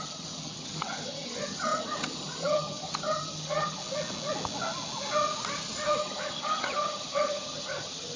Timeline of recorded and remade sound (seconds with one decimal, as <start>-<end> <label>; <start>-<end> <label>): 0.0-3.8 remade; 3.8-6.0 recorded; 6.0-8.2 remade